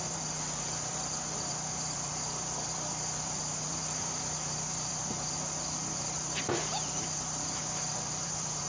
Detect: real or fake fake